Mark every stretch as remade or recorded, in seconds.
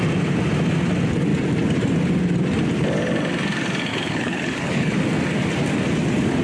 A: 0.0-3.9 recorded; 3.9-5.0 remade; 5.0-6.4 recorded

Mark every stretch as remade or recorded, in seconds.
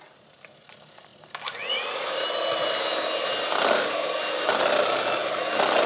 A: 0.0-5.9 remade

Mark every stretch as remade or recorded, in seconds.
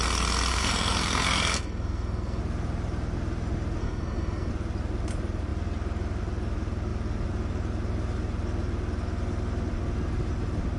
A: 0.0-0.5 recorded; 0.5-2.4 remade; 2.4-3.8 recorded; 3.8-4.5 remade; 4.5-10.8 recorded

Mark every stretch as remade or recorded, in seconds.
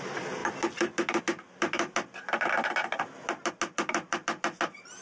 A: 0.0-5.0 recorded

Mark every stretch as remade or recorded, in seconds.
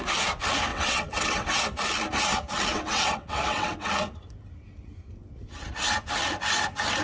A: 0.0-0.7 recorded; 0.7-1.6 remade; 1.6-2.7 recorded; 2.7-3.9 remade; 3.9-7.0 recorded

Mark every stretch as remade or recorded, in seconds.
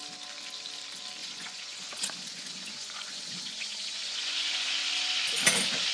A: 0.0-1.2 recorded; 1.2-4.7 remade; 4.7-5.9 recorded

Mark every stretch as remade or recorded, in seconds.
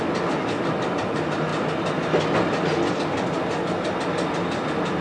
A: 0.0-5.0 recorded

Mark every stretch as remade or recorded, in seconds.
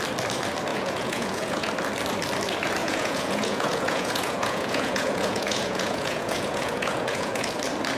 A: 0.0-0.7 recorded; 0.7-1.7 remade; 1.7-2.8 recorded; 2.8-7.5 remade; 7.5-8.0 recorded